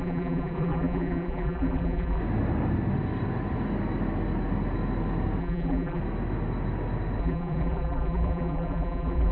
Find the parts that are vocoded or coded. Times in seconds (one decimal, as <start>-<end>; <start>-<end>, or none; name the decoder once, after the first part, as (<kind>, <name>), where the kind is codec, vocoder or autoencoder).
0.0-2.2 (vocoder, BigVGAN v2); 5.4-6.0; 7.2-9.3